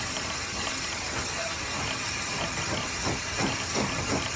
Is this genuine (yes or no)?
yes